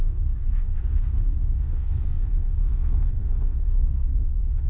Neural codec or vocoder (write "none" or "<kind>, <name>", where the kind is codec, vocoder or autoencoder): codec, SNAC